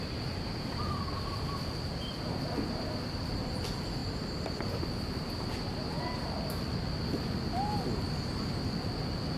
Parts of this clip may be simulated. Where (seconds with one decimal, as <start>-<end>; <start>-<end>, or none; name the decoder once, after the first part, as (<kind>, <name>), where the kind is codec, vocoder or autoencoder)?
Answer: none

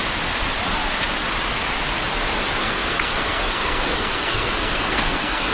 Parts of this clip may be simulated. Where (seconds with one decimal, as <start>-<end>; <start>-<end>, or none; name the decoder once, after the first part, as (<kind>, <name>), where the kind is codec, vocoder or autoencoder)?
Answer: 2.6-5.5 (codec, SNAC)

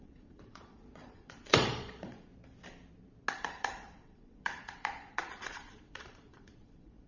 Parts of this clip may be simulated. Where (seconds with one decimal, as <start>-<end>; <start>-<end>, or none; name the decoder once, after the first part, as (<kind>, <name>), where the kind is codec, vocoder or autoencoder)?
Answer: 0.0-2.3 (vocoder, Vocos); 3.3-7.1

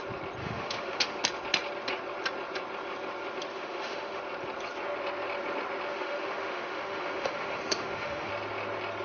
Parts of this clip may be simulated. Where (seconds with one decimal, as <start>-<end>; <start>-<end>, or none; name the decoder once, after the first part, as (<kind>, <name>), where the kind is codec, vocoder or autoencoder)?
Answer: 0.4-1.2 (autoencoder, DAC-VAE); 3.5-4.2; 5.9-8.3